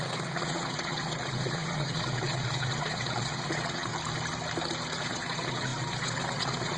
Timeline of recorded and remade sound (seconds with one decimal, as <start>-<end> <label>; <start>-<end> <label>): 0.0-3.9 remade; 3.9-5.0 recorded; 5.0-6.8 remade